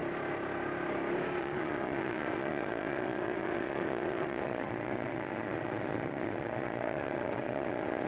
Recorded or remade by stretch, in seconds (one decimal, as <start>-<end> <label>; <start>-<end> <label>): 0.0-1.4 recorded; 1.4-8.1 remade